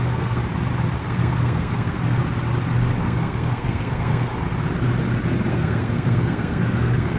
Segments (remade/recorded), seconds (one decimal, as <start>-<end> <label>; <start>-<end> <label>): 0.0-0.4 remade; 0.4-1.0 recorded; 1.0-2.2 remade; 2.2-3.0 recorded; 3.0-4.3 remade; 4.3-5.5 recorded; 5.5-7.2 remade